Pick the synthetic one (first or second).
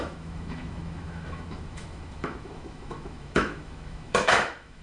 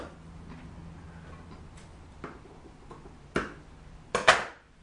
first